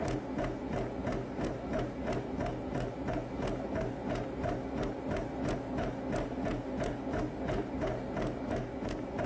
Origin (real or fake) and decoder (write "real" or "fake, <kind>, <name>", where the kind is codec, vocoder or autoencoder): real